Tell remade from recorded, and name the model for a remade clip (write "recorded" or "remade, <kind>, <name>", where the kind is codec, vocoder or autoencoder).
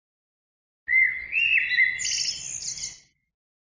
recorded